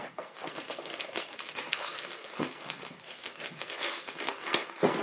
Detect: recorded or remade remade